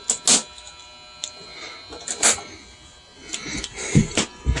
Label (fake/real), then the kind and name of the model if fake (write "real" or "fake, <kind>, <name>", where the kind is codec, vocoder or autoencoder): real